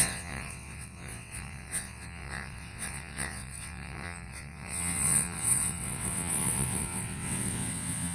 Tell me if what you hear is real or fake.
fake